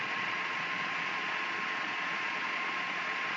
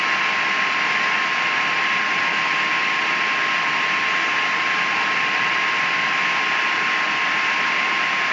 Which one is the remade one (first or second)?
first